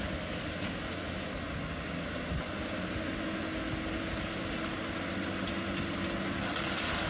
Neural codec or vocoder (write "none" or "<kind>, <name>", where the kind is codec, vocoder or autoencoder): none